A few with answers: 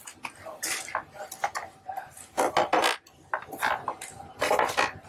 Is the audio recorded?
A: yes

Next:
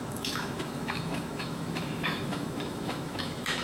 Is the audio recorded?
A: no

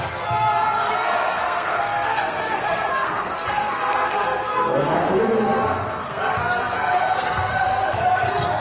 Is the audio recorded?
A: no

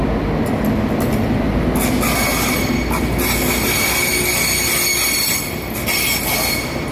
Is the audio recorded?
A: yes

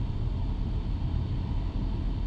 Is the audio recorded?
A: yes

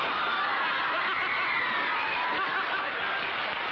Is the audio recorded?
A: yes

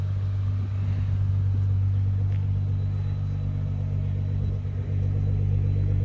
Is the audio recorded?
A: yes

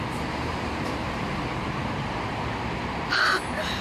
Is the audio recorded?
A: no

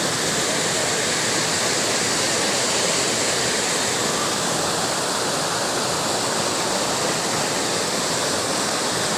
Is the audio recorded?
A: yes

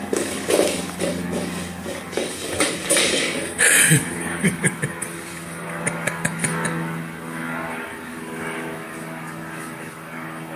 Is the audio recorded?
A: no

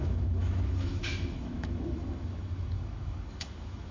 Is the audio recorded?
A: no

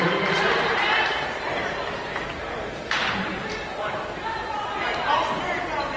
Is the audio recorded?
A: no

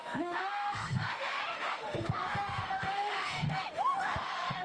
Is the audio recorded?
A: no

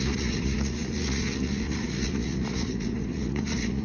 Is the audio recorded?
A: no